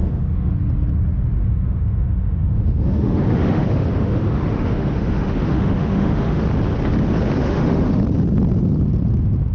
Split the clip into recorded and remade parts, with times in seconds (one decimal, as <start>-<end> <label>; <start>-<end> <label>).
0.0-0.5 remade; 0.5-1.4 recorded; 1.4-6.4 remade; 6.4-7.4 recorded; 7.4-8.0 remade; 8.0-9.5 recorded